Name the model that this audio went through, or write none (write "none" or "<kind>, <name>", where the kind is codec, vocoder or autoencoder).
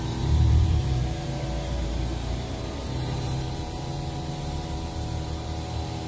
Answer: vocoder, BigVGAN v2